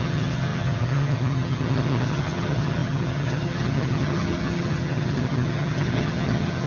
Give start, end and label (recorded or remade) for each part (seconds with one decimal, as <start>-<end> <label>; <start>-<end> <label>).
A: 0.0-6.7 remade